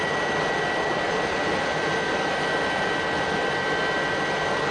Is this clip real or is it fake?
real